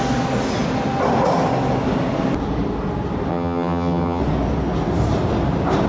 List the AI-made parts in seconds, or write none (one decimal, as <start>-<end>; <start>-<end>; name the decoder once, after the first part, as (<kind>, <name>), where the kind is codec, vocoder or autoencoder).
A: 3.3-4.2 (vocoder, HiFi-GAN)